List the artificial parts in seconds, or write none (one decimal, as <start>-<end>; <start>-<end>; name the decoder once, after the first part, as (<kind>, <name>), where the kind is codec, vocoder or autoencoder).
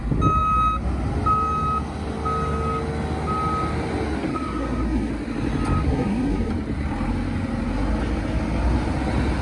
4.3-5.1 (codec, SNAC); 5.8-6.5